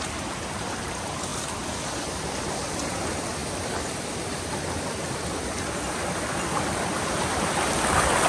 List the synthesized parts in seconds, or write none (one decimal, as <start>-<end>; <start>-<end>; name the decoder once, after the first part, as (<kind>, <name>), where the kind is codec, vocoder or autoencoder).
none